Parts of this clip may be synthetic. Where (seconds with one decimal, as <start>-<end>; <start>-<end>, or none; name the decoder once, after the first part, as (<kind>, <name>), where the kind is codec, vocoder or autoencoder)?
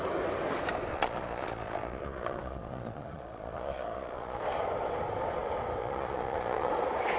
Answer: 0.9-4.4 (vocoder, Vocos); 5.8-6.7